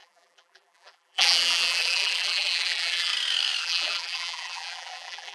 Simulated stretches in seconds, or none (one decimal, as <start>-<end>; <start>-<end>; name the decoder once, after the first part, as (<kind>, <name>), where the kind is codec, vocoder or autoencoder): 0.0-3.1 (vocoder, BigVGAN v2); 3.6-5.3